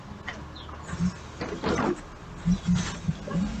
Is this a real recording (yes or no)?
yes